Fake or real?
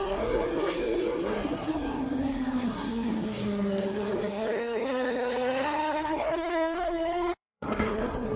fake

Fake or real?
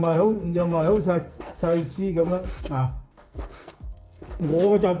fake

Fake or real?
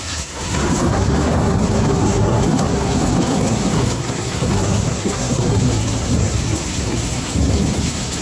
fake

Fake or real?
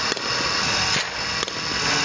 real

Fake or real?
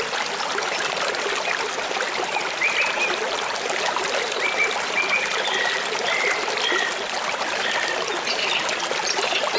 real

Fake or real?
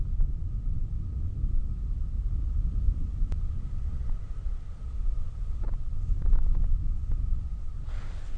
real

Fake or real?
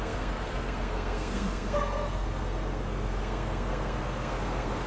fake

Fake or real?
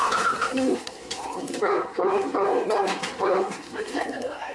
fake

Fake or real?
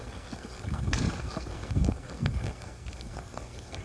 fake